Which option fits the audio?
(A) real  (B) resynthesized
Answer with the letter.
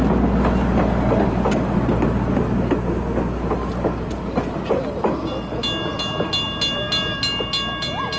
A